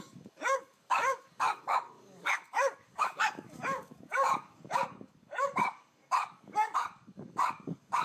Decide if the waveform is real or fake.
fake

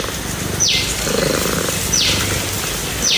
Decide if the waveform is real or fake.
real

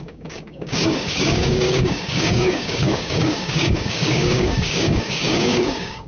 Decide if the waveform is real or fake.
fake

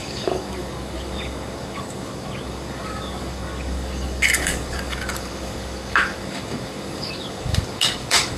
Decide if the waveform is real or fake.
fake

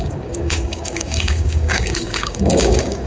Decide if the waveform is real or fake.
fake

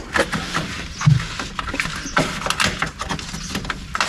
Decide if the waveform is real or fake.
real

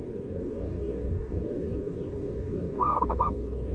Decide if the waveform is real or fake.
fake